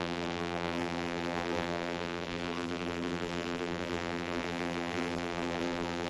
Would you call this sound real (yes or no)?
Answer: no